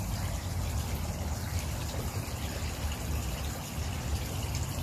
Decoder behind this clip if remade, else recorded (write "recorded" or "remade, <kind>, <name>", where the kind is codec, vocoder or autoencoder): recorded